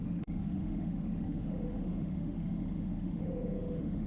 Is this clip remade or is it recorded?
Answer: remade